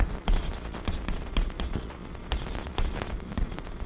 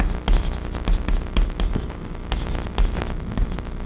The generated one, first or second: first